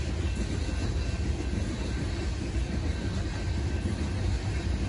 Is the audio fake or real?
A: real